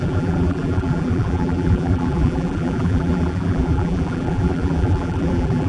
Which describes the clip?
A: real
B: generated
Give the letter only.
B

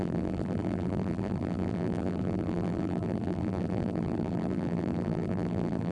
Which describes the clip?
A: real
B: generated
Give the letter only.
B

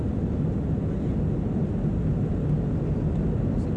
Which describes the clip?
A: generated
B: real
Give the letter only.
B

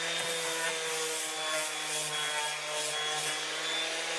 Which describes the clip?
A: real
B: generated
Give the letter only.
A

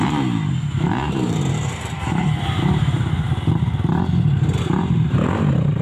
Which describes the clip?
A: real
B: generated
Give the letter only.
B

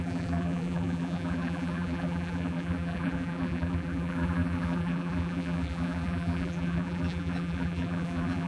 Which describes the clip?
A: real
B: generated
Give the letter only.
B